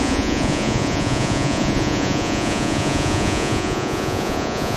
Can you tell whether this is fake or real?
fake